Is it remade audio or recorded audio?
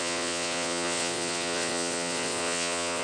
remade